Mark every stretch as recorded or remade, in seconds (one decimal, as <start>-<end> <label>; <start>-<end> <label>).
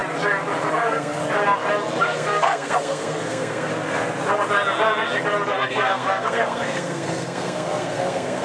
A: 0.0-0.7 recorded; 0.7-1.2 remade; 1.2-2.0 recorded; 2.0-3.7 remade; 3.7-5.5 recorded; 5.5-8.4 remade